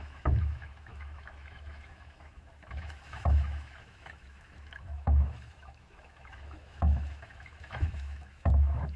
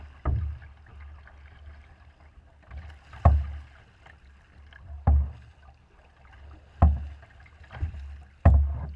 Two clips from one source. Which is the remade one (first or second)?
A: first